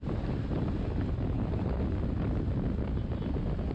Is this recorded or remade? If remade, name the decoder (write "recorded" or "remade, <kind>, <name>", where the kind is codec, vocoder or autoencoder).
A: recorded